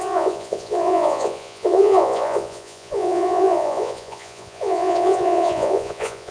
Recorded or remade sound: remade